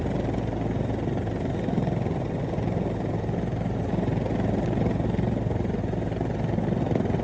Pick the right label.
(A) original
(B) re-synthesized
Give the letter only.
A